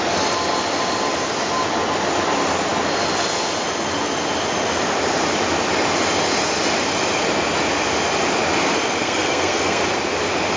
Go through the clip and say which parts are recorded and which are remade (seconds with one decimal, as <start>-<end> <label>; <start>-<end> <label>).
0.0-9.0 recorded; 9.0-9.8 remade; 9.8-10.6 recorded